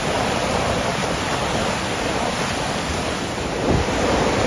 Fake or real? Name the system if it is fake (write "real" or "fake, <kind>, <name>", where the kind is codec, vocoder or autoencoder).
real